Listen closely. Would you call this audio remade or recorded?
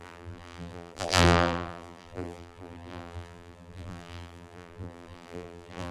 remade